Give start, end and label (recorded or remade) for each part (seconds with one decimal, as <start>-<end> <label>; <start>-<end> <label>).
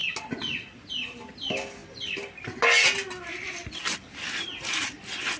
0.0-5.4 recorded